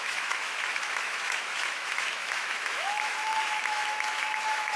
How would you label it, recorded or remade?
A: remade